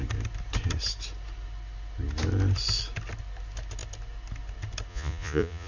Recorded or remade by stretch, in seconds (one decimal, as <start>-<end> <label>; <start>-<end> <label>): 0.0-4.9 recorded; 4.9-5.7 remade